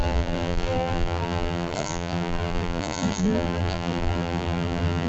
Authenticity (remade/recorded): remade